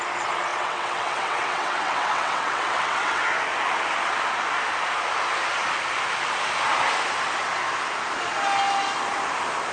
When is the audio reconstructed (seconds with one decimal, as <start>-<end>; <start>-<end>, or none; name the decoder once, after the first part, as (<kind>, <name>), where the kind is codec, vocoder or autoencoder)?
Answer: 0.5-3.2 (vocoder, WaveNeXt)